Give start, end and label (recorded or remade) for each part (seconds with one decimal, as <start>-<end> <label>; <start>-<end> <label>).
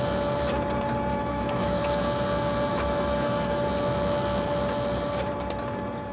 0.0-1.1 recorded; 1.1-1.8 remade; 1.8-2.7 recorded; 2.7-3.7 remade; 3.7-6.1 recorded